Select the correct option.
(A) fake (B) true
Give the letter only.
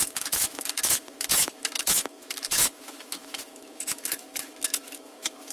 A